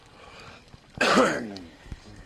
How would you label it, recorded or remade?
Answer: remade